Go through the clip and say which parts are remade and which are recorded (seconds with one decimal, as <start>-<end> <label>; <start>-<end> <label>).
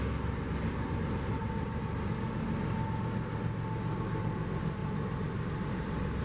0.0-1.4 recorded; 1.4-1.9 remade; 1.9-4.8 recorded; 4.8-6.2 remade